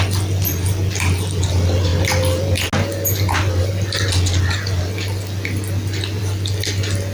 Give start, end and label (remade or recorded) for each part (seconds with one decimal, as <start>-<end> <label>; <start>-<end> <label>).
0.0-7.1 recorded